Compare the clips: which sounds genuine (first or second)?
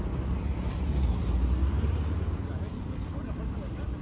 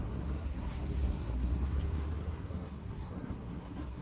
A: first